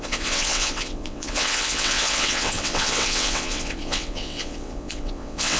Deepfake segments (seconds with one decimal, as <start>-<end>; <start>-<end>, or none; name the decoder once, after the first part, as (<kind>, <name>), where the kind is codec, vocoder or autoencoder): 0.0-5.6 (vocoder, WaveNeXt)

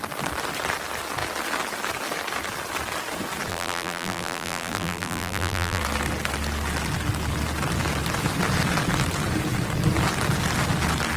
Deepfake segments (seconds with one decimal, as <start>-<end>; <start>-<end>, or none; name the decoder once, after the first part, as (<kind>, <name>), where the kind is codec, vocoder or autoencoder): 3.5-5.8 (vocoder, BigVGAN v2)